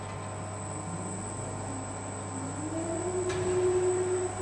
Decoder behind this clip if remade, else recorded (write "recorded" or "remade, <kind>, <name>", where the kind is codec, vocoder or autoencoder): recorded